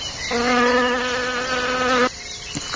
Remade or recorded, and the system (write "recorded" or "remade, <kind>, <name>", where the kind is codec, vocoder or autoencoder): recorded